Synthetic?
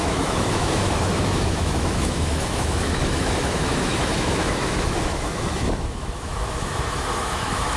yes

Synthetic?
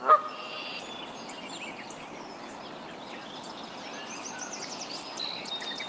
no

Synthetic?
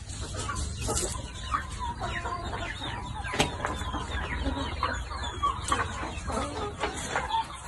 no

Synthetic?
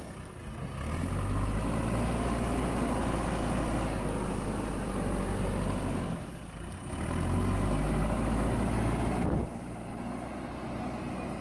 no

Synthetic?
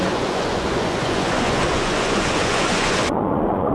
yes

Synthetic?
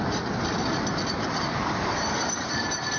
no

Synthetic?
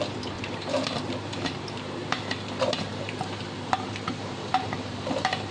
yes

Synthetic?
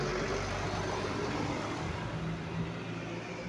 no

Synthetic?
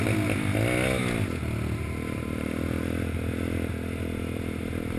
no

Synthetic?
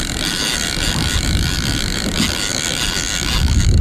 yes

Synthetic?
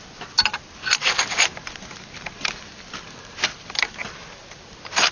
no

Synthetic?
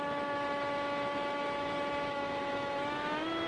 yes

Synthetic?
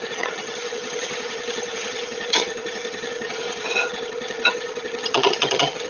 yes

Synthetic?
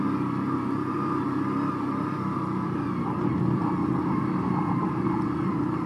yes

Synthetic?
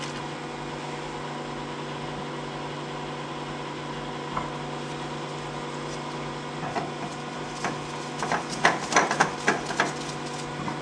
no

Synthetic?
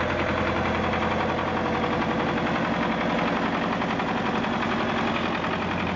no